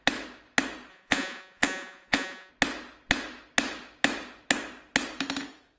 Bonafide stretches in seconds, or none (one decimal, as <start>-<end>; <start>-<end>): 0.0-0.9; 2.5-5.8